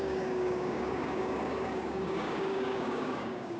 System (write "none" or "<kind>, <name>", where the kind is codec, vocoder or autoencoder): codec, DAC